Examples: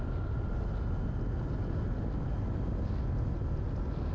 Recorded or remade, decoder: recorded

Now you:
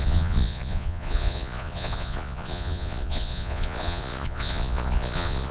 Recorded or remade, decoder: remade, vocoder, Vocos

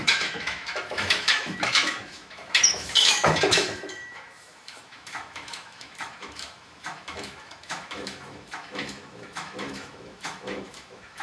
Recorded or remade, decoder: remade, autoencoder, DAC-VAE